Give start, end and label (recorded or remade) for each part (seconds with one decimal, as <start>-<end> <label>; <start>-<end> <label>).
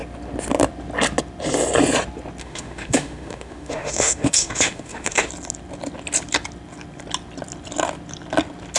0.0-2.4 recorded; 2.4-5.3 remade; 5.3-8.8 recorded